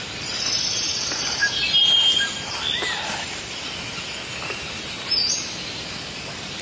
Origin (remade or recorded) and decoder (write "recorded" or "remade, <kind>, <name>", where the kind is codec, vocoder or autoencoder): recorded